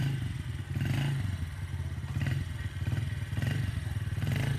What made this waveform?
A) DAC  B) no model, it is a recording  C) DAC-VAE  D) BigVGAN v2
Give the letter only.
B